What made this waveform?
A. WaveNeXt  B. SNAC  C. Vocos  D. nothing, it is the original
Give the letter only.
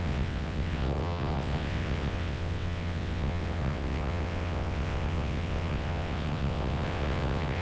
A